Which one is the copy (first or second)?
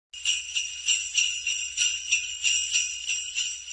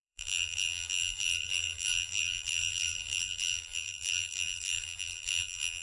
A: second